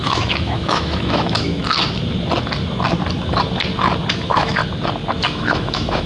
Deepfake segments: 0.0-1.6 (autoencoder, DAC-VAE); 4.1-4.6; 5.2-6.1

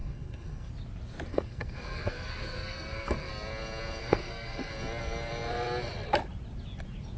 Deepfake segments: 0.0-0.7 (codec, SNAC); 1.3-3.3; 4.0-4.7

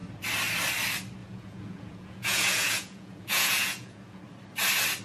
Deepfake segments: 1.2-4.2 (vocoder, Vocos)

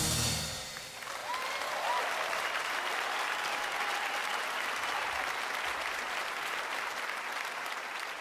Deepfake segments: none

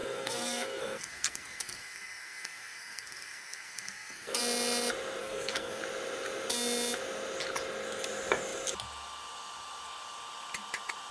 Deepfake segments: 0.0-4.4 (codec, SNAC); 5.2-5.8

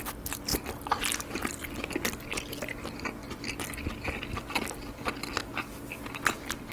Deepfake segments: none

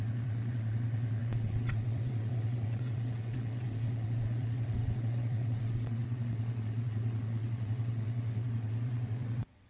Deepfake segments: 0.0-9.7 (vocoder, WaveNeXt)

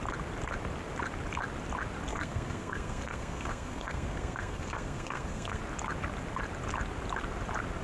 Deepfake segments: 2.1-5.6 (codec, SNAC)